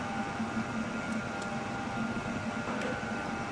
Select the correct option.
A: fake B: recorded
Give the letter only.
B